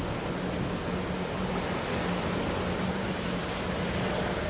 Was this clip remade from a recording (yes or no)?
no